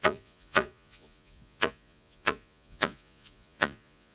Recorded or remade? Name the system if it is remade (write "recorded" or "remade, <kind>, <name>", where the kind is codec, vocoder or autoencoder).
remade, vocoder, Vocos